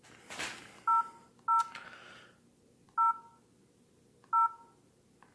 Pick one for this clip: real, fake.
real